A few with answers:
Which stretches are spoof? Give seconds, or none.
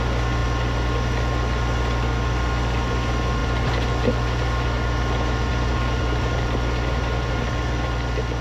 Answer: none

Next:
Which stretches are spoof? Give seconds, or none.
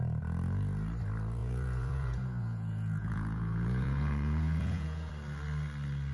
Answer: 1.4-5.1 (vocoder, Vocos)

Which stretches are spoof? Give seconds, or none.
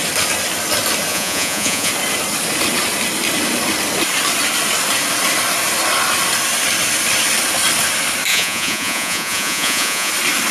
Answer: 1.1-1.9 (vocoder, Vocos); 8.3-10.1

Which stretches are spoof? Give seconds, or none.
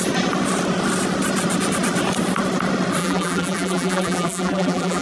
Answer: 3.0-5.0 (vocoder, BigVGAN v2)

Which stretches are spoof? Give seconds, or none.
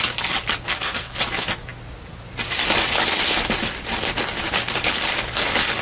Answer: 0.7-1.2 (codec, SNAC)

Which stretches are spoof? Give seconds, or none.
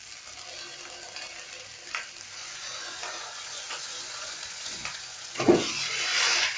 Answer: 2.4-6.6 (vocoder, Vocos)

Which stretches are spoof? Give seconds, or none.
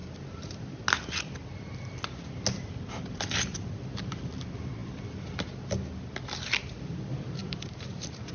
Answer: 0.0-0.8 (vocoder, BigVGAN v2); 7.4-8.3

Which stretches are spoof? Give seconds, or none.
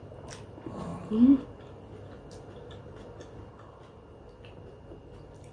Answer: none